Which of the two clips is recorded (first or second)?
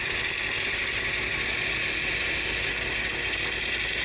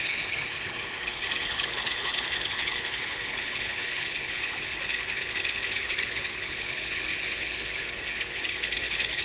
first